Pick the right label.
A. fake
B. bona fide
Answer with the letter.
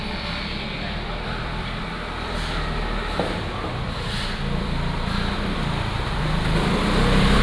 A